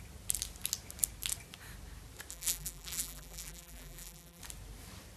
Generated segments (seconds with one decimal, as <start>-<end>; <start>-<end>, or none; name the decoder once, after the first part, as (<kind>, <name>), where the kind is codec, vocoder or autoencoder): 2.3-4.4 (vocoder, BigVGAN v2)